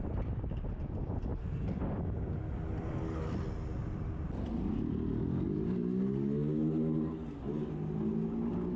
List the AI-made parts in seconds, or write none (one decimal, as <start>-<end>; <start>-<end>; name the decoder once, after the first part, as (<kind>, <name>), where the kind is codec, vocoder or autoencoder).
none